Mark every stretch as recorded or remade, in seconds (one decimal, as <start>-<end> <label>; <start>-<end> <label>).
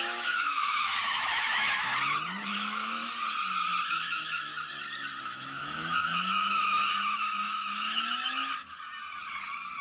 0.0-1.9 remade; 1.9-2.5 recorded; 2.5-3.0 remade; 3.0-3.9 recorded; 3.9-4.5 remade; 4.5-5.2 recorded; 5.2-8.5 remade; 8.5-9.8 recorded